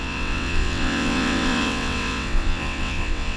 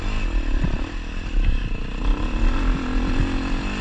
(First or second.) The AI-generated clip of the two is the first